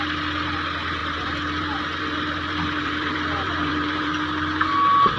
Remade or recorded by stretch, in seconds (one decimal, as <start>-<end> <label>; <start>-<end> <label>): 0.0-1.0 recorded; 1.0-4.1 remade; 4.1-5.2 recorded